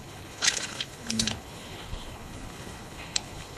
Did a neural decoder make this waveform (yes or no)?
yes